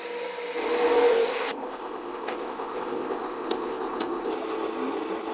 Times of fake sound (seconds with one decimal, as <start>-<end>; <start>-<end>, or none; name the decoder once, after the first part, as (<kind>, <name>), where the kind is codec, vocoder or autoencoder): 1.1-4.3 (codec, ZipCodec)